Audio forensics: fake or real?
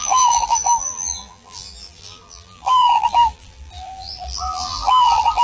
fake